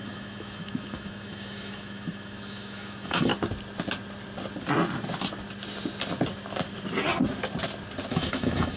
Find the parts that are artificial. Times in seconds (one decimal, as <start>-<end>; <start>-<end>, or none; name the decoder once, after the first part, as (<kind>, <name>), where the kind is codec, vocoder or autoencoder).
0.0-3.3 (autoencoder, DAC-VAE); 8.1-8.8